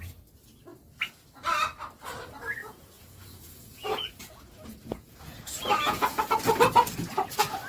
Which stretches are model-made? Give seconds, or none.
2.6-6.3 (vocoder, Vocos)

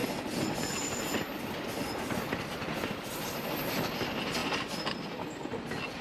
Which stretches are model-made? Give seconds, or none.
none

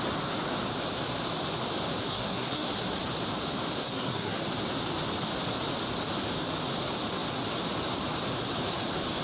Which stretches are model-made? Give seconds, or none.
2.0-3.0 (codec, SNAC); 3.8-4.4